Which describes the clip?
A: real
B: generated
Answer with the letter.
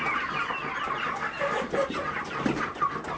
A